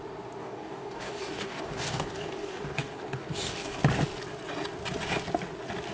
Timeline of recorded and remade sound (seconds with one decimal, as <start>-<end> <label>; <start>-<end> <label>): 0.0-0.4 recorded; 0.4-3.8 remade; 3.8-5.9 recorded

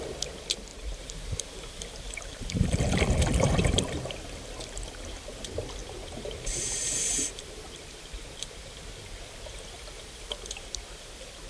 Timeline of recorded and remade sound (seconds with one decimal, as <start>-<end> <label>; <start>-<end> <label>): 0.0-0.7 recorded; 0.7-3.8 remade; 3.8-5.8 recorded; 5.8-8.9 remade; 8.9-11.5 recorded

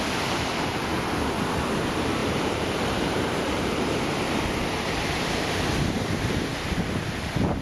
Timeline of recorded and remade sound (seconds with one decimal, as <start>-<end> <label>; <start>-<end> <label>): 0.0-2.2 recorded; 2.2-4.1 remade; 4.1-7.6 recorded

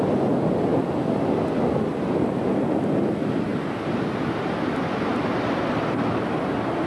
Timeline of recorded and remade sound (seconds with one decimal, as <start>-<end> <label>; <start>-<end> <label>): 0.0-6.9 recorded

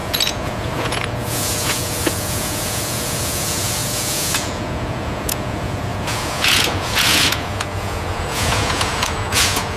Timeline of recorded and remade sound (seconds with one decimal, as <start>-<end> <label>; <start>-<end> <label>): 0.0-9.8 remade